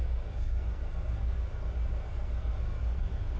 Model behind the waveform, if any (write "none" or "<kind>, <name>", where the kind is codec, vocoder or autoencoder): codec, SNAC